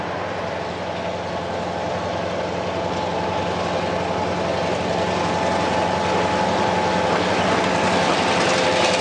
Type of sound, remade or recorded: recorded